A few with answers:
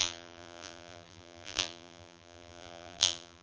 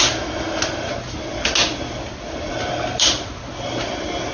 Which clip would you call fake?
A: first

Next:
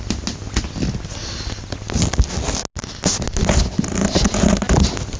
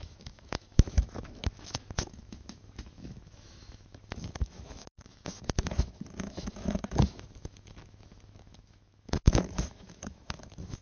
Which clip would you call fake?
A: second